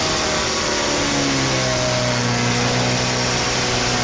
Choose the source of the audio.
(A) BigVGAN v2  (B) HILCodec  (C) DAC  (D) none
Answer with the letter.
D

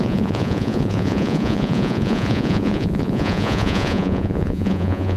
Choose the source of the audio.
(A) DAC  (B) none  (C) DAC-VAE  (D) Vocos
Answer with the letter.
D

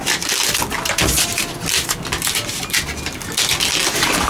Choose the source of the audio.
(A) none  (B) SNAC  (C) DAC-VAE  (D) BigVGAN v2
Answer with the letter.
A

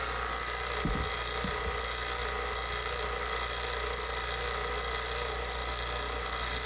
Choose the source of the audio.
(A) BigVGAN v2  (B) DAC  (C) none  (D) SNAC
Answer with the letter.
C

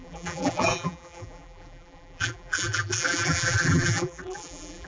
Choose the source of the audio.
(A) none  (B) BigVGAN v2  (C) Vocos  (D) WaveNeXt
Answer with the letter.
B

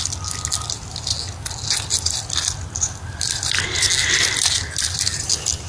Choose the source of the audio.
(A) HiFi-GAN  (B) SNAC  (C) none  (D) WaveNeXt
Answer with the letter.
C